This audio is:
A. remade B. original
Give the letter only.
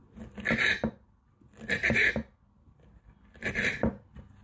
B